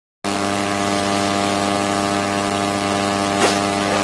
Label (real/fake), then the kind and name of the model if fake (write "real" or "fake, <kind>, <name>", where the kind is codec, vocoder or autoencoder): real